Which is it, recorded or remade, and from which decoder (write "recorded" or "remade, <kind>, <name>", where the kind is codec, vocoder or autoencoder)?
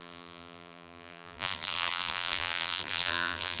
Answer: remade, vocoder, BigVGAN v2